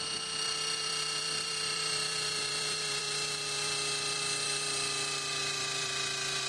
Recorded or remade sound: remade